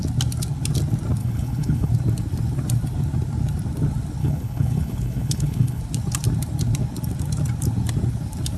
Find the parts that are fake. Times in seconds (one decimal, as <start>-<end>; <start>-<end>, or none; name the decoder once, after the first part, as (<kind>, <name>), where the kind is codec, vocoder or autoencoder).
1.2-1.9 (codec, HILCodec); 4.2-5.8